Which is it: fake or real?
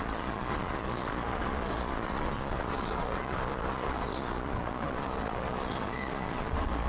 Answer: fake